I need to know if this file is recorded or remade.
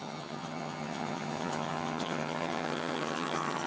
remade